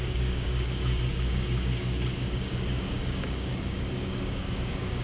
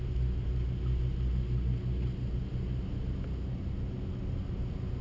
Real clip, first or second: second